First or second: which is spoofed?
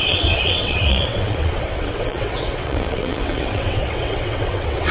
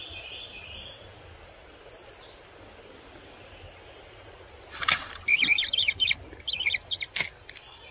first